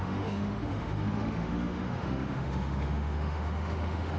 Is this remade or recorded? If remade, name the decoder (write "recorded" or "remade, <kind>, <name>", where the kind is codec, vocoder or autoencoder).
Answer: remade, autoencoder, DAC-VAE